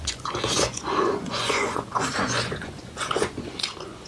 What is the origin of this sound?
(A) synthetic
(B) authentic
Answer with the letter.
A